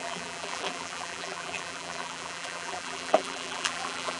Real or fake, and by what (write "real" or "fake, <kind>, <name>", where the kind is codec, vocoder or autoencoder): fake, vocoder, BigVGAN v2